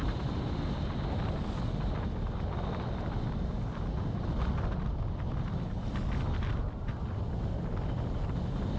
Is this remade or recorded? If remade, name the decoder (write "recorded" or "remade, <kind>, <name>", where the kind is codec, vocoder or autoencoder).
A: recorded